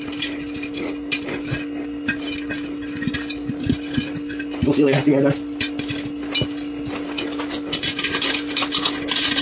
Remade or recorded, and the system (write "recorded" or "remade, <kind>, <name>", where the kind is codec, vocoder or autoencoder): recorded